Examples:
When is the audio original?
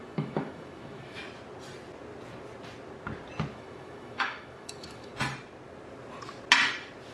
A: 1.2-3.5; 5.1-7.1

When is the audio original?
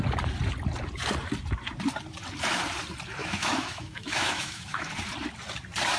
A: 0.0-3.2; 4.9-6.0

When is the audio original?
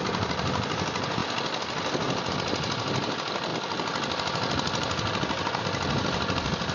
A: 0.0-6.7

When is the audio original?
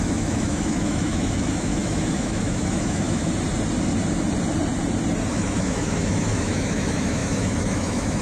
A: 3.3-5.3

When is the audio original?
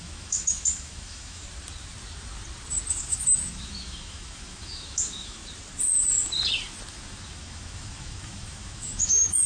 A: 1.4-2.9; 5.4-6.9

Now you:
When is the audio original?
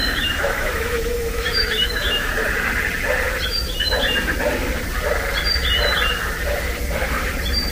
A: 2.3-7.7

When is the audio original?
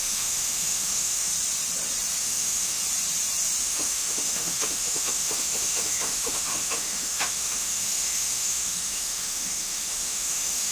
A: 1.3-2.2; 2.8-3.6